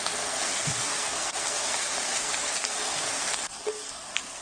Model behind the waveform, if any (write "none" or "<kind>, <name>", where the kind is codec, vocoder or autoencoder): codec, SNAC